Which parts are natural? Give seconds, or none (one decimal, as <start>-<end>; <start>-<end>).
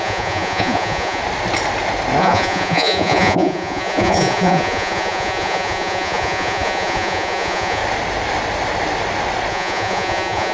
1.2-2.2; 7.8-9.5